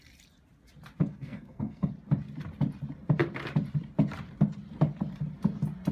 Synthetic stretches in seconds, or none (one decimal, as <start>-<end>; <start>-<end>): 1.0-1.9